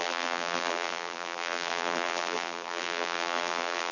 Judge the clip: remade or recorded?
remade